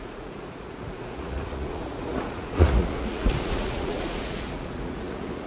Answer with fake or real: fake